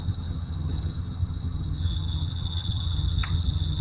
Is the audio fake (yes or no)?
yes